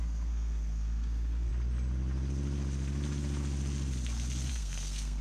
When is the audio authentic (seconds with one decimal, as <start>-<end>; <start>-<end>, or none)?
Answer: 1.5-4.5